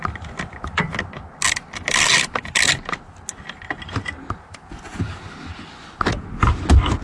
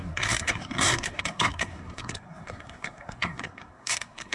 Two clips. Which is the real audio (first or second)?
first